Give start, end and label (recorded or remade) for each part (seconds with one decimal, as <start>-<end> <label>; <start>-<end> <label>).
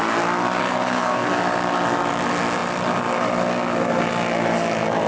0.0-0.6 recorded; 0.6-1.3 remade; 1.3-5.1 recorded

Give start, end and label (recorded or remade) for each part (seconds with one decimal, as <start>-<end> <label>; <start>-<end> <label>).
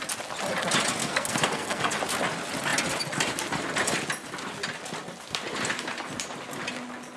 0.0-1.0 recorded; 1.0-2.0 remade; 2.0-7.2 recorded